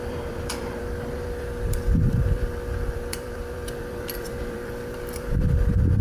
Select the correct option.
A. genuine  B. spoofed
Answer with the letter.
B